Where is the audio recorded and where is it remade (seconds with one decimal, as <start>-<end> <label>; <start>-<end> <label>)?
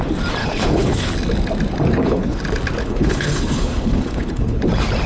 0.0-0.4 recorded; 0.4-1.1 remade; 1.1-1.9 recorded; 1.9-2.4 remade; 2.4-2.8 recorded; 2.8-4.6 remade; 4.6-5.1 recorded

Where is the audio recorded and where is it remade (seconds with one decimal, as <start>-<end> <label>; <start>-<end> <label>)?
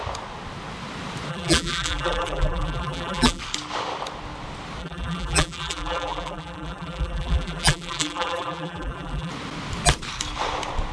0.0-1.3 recorded; 1.3-3.4 remade; 3.4-4.8 recorded; 4.8-9.3 remade; 9.3-10.9 recorded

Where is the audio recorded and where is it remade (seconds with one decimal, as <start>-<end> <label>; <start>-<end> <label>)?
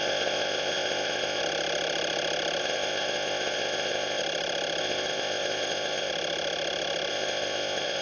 0.0-1.4 remade; 1.4-2.6 recorded; 2.6-4.2 remade; 4.2-4.8 recorded; 4.8-6.1 remade; 6.1-7.1 recorded; 7.1-8.0 remade